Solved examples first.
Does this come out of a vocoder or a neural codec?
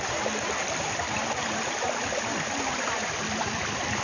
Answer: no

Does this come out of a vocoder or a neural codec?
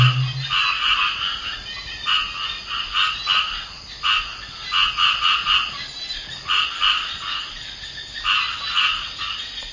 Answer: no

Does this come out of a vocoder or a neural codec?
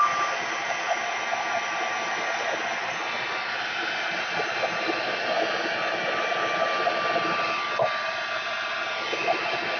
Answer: no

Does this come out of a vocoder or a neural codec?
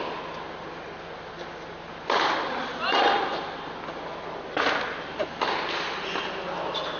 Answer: no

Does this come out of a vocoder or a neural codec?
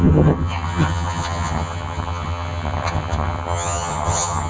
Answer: yes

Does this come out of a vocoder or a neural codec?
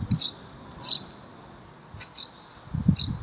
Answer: no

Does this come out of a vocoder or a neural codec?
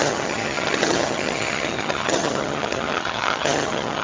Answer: yes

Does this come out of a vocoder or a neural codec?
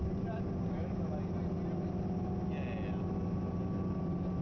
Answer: no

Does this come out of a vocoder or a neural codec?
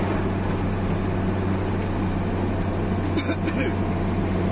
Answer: no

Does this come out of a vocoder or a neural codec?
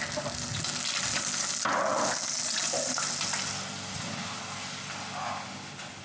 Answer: no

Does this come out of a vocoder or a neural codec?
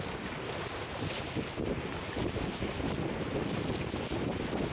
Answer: no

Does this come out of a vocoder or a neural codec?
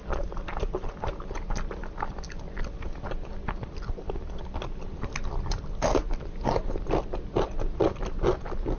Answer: no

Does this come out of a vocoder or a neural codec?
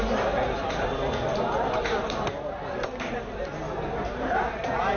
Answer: no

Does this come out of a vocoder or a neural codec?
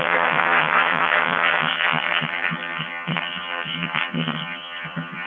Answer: yes